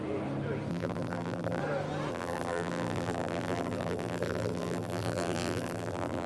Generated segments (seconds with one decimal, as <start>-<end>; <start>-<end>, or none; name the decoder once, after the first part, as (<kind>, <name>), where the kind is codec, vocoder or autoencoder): 0.7-1.6 (vocoder, BigVGAN v2); 2.1-6.3